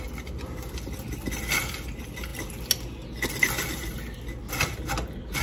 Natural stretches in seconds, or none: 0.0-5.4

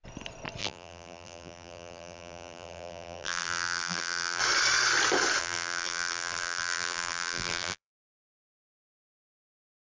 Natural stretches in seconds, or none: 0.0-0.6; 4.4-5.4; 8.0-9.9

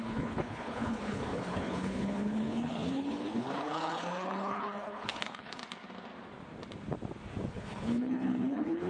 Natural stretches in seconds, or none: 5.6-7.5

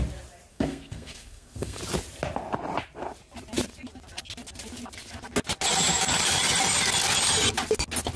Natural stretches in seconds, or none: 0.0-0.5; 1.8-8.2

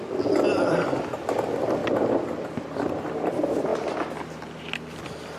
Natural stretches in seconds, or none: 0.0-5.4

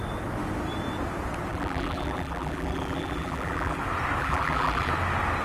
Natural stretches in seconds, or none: 0.0-1.5; 3.8-4.2; 4.9-5.4